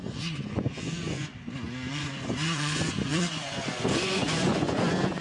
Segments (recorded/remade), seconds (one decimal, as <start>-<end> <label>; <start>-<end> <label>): 0.0-1.3 remade; 1.3-1.9 recorded; 1.9-5.2 remade